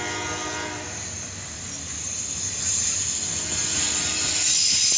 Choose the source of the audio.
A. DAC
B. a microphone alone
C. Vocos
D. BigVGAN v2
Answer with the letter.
B